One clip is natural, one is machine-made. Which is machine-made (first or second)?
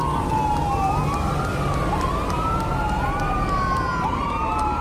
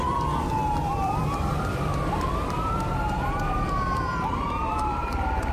second